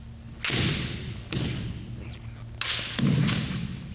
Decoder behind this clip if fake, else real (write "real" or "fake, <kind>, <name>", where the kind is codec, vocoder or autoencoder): real